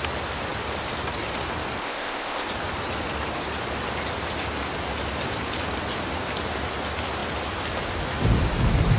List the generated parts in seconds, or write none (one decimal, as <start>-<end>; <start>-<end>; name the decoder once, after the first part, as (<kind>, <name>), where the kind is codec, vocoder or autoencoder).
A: 1.8-2.5 (codec, ZipCodec)

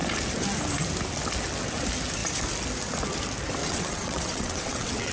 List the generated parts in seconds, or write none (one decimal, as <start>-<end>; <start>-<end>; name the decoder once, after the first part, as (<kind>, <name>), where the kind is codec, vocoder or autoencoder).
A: 3.6-5.1 (vocoder, WaveNeXt)

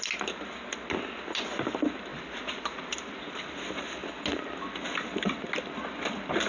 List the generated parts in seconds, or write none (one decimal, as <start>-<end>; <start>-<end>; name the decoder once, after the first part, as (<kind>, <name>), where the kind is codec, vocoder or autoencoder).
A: 2.1-3.2 (vocoder, BigVGAN v2)

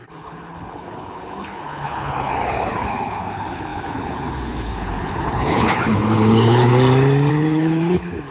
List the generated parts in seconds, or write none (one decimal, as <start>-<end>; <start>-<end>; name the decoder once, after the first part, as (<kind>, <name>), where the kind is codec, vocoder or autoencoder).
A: 0.0-6.7 (codec, HILCodec); 7.3-8.3